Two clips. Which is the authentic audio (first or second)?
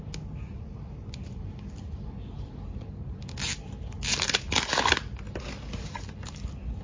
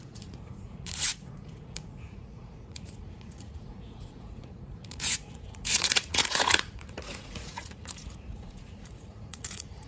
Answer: first